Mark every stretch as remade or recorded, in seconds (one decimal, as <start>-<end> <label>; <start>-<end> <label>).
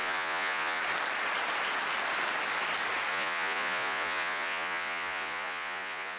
0.0-0.8 remade; 0.8-3.1 recorded; 3.1-6.2 remade